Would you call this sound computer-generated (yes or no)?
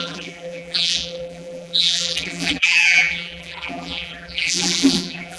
yes